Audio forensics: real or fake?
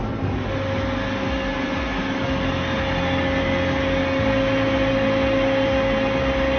real